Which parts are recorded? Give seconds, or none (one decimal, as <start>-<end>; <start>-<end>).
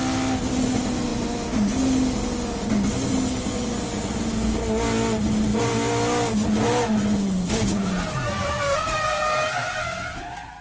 0.0-10.6